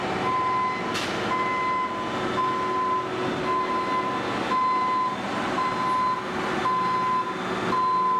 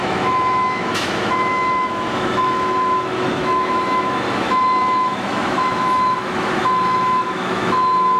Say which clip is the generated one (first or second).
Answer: second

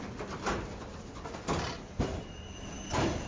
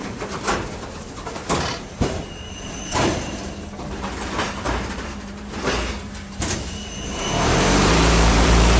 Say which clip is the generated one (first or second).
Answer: second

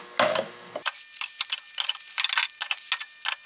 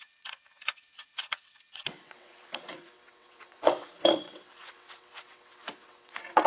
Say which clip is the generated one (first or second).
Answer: second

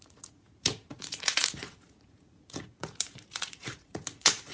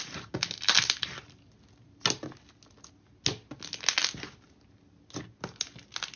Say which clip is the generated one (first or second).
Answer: first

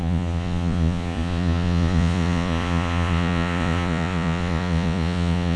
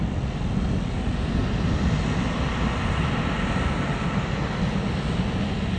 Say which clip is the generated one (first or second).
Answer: first